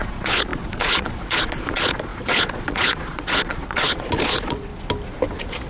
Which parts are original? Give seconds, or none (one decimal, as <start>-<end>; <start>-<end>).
4.7-5.7